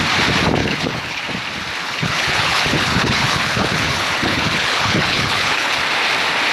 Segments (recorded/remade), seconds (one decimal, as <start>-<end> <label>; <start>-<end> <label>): 0.0-0.6 recorded; 0.6-1.2 remade; 1.2-1.8 recorded; 1.8-5.7 remade; 5.7-6.5 recorded